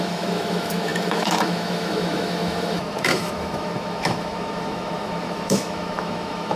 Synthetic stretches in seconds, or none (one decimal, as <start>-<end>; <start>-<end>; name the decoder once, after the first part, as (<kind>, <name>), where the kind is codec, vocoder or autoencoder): 0.0-6.6 (autoencoder, DAC-VAE)